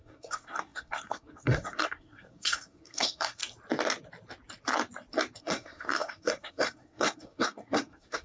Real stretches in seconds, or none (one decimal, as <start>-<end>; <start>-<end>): 3.4-5.4